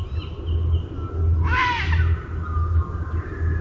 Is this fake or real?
real